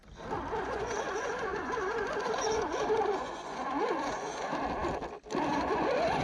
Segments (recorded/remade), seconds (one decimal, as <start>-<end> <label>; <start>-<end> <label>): 0.0-0.6 recorded; 0.6-4.5 remade; 4.5-5.5 recorded; 5.5-6.2 remade